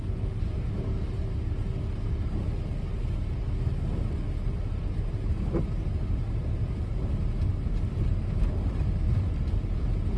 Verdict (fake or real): real